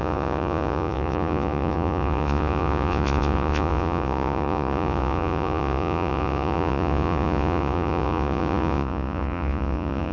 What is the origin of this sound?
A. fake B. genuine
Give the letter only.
A